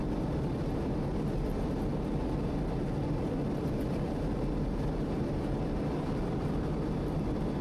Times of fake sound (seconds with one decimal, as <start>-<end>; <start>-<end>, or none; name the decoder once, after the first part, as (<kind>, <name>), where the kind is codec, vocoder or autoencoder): none